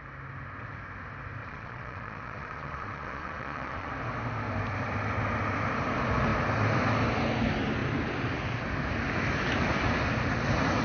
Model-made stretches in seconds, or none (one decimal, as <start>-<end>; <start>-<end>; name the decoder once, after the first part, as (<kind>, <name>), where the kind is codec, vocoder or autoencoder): 1.4-3.9 (vocoder, Vocos)